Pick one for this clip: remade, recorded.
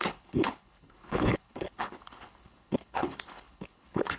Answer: remade